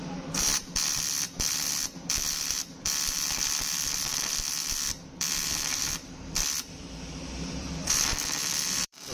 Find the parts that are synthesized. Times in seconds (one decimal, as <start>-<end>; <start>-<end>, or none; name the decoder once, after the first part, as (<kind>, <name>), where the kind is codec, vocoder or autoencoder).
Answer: 0.0-9.1 (vocoder, BigVGAN v2)